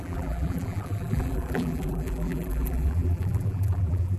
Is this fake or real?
fake